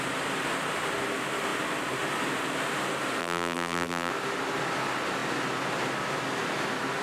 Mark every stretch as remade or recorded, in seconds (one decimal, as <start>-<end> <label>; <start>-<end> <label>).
0.0-3.2 recorded; 3.2-4.1 remade; 4.1-7.0 recorded